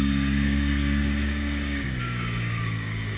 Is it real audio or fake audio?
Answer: fake